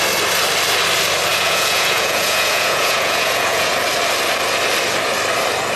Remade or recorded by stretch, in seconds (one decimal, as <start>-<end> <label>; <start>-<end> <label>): 0.0-1.3 recorded; 1.3-3.7 remade; 3.7-5.8 recorded